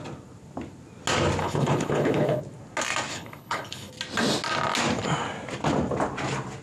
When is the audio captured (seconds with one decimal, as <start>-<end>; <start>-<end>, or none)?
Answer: 0.0-1.4; 2.4-3.1; 3.9-6.6